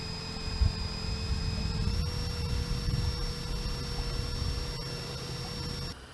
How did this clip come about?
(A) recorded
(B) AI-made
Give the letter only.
A